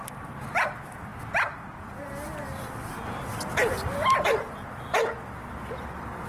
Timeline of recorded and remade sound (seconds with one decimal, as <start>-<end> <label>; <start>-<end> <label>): 0.0-6.3 recorded